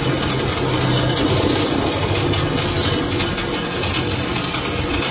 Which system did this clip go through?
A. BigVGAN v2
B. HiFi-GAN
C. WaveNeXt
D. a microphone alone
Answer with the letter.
D